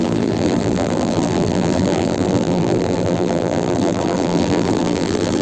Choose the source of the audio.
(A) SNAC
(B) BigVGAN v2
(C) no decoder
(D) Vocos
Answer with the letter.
B